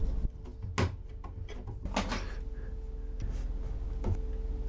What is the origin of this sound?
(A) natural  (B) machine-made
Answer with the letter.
A